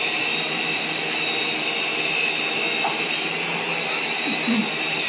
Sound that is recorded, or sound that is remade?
recorded